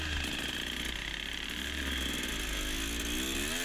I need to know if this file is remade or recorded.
recorded